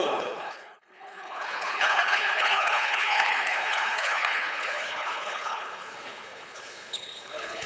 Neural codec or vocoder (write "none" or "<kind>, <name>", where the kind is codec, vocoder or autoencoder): codec, HILCodec